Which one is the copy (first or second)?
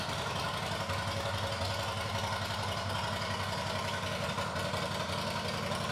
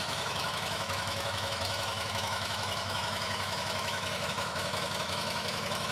second